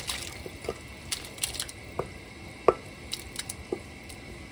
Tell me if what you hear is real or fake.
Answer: real